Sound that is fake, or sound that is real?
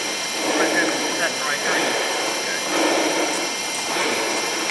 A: fake